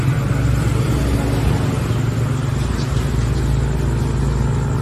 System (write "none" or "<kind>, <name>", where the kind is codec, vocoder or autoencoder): none